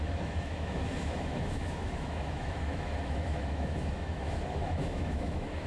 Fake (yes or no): yes